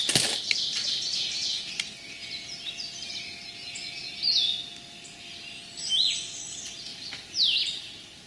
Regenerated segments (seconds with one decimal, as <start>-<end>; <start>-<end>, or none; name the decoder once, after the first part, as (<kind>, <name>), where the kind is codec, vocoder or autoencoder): 6.9-7.9 (vocoder, BigVGAN v2)